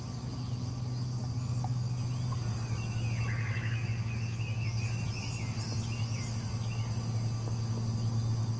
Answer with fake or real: real